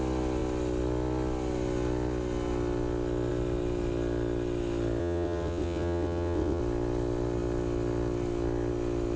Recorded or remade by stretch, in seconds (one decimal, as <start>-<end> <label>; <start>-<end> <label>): 0.0-5.0 recorded; 5.0-6.6 remade; 6.6-9.2 recorded